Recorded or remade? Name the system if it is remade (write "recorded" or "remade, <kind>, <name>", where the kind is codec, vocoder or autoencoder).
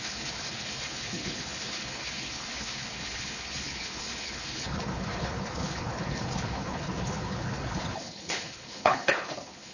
remade, codec, HILCodec